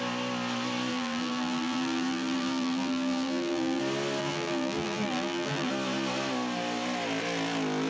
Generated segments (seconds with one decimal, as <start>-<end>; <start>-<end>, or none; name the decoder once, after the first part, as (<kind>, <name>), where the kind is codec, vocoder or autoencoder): 0.9-3.8 (vocoder, BigVGAN v2); 4.2-5.7